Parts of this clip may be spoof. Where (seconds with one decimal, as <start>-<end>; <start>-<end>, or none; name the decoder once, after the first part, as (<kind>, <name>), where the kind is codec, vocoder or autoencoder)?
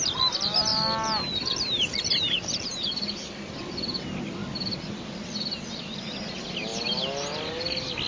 6.7-8.1 (vocoder, BigVGAN v2)